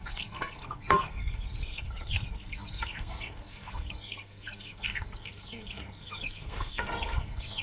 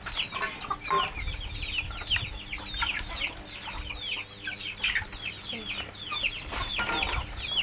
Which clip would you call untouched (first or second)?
second